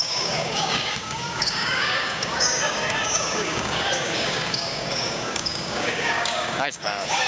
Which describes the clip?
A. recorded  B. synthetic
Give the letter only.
B